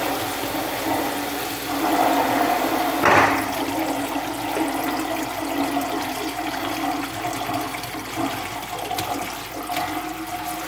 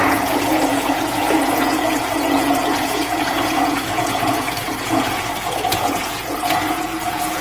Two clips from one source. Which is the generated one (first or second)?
second